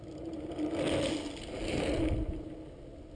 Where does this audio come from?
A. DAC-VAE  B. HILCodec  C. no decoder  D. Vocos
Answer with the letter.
C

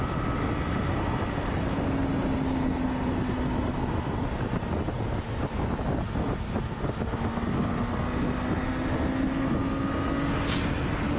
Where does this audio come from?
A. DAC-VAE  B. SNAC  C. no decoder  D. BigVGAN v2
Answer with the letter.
C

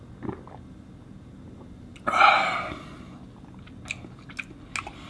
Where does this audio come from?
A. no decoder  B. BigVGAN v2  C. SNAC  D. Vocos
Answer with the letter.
A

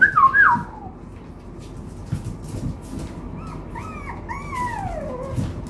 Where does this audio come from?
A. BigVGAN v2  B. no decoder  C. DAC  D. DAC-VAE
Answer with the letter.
B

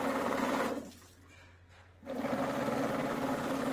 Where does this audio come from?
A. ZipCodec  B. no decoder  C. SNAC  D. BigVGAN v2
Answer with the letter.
B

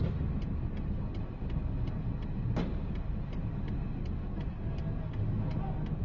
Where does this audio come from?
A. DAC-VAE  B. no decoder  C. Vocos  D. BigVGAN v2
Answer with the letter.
B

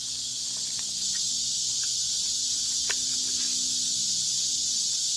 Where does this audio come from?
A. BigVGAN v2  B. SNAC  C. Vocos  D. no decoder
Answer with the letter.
D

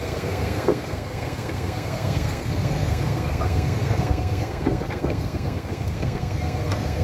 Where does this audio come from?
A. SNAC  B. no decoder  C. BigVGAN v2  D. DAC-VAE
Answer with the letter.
A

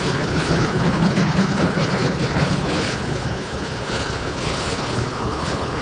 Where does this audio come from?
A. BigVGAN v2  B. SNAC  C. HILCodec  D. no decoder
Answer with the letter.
C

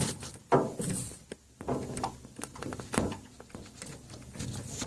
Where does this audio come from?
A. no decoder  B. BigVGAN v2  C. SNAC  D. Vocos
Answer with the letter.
A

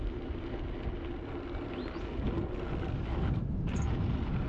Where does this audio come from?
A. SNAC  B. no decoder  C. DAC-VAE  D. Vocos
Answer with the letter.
B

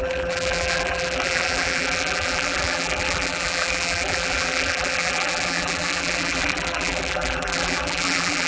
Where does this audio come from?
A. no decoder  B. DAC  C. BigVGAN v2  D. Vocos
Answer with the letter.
C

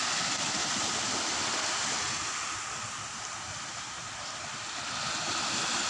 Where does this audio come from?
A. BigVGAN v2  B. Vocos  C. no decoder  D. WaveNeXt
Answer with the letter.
C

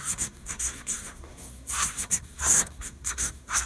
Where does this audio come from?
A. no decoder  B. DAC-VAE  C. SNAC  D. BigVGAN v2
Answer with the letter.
C